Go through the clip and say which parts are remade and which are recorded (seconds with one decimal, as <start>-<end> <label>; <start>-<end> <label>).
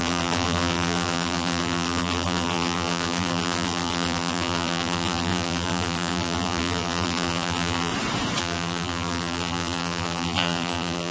0.0-7.9 remade; 7.9-8.4 recorded; 8.4-11.1 remade